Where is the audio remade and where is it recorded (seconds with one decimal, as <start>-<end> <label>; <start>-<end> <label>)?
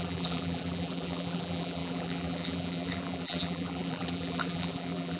0.0-5.2 remade